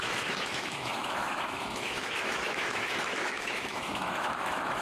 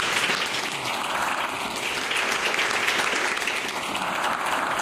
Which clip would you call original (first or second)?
second